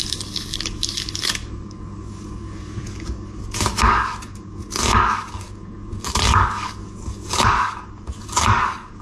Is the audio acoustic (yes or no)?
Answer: no